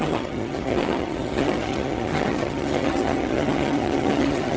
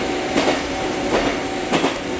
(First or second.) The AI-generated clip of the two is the first